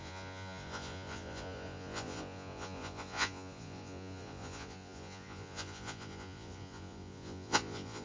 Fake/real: fake